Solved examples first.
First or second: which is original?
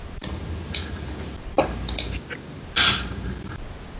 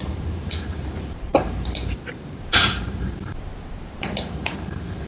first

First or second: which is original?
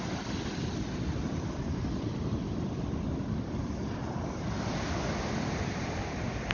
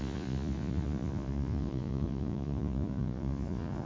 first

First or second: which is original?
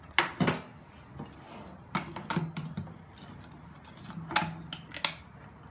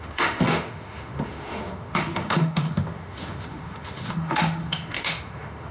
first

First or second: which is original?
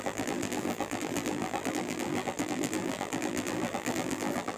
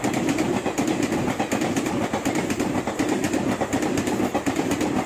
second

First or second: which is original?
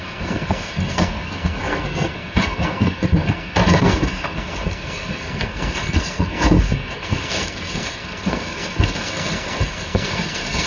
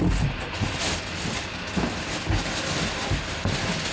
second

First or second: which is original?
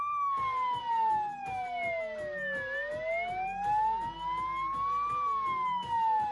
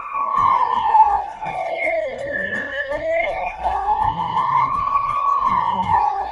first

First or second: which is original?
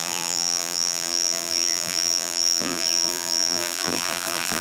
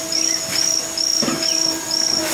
second